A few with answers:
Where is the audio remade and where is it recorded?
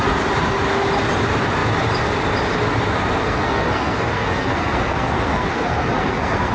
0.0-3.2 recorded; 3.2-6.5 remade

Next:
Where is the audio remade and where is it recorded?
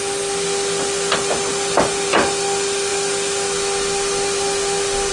0.0-5.1 recorded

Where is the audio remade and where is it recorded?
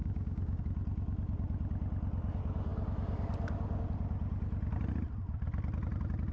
0.0-0.6 remade; 0.6-6.3 recorded